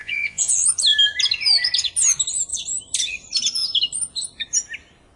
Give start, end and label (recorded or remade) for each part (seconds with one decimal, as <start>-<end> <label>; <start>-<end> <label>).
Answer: 0.0-0.5 remade; 0.5-5.2 recorded